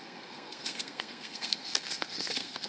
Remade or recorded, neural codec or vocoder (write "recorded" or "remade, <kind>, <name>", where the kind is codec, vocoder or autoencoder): remade, codec, SNAC